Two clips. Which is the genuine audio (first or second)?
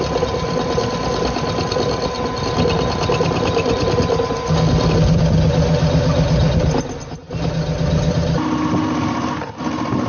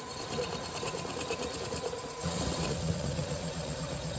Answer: first